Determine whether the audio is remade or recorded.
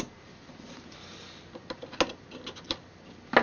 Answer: recorded